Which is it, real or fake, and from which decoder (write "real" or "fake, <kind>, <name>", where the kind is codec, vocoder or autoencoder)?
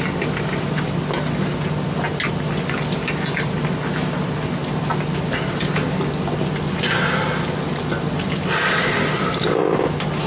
real